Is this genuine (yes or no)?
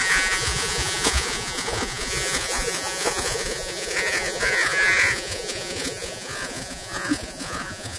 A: no